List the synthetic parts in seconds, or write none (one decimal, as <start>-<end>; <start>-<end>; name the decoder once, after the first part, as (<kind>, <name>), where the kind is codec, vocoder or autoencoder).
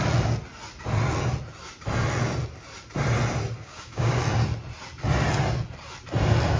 3.6-4.2 (codec, DAC)